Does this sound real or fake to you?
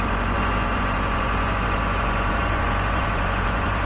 fake